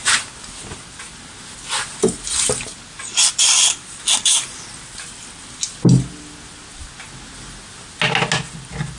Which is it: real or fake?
real